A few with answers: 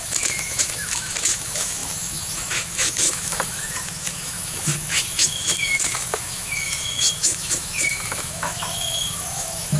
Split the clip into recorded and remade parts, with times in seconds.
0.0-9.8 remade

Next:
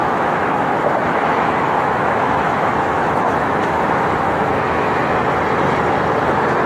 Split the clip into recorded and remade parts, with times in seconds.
0.0-5.0 remade; 5.0-6.7 recorded

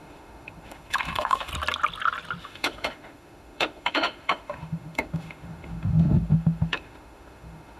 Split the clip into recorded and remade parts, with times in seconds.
0.0-1.5 remade; 1.5-2.4 recorded; 2.4-7.8 remade

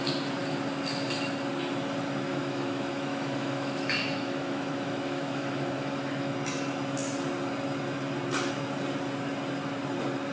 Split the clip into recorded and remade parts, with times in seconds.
0.0-2.3 recorded; 2.3-6.3 remade; 6.3-10.3 recorded